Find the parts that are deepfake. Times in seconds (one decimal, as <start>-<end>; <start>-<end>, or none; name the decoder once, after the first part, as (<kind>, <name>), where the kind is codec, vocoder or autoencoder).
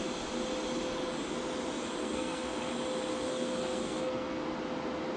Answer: 2.0-2.7 (codec, SNAC); 3.1-4.4